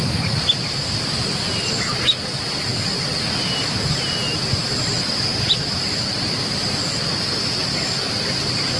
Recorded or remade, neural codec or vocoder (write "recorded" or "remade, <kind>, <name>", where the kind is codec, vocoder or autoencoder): recorded